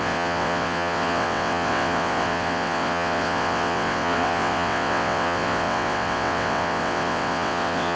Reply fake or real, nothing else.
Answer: fake